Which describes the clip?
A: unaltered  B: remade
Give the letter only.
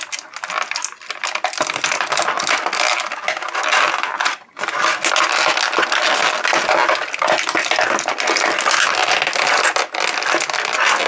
A